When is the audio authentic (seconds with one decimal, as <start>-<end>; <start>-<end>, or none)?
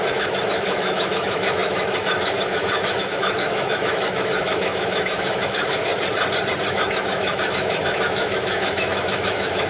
5.9-6.7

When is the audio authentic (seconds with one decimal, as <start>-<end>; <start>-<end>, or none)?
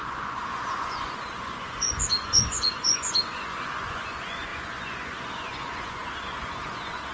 none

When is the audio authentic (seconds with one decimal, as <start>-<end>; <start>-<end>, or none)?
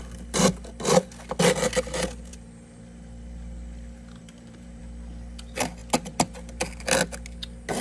0.0-2.3; 2.8-4.2; 4.8-7.8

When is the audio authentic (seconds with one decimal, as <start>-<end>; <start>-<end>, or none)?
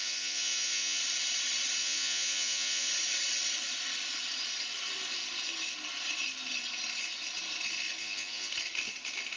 1.0-1.8; 2.9-8.0; 8.5-9.4